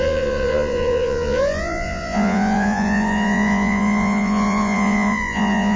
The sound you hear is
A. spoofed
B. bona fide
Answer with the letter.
A